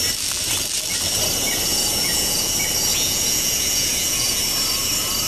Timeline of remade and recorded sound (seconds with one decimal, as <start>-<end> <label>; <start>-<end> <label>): 0.0-1.7 recorded; 1.7-2.5 remade; 2.5-2.9 recorded; 2.9-4.4 remade; 4.4-5.3 recorded